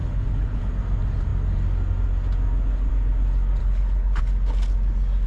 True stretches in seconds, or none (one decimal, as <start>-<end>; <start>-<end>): 0.7-3.6; 4.2-5.3